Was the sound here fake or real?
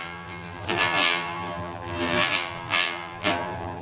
fake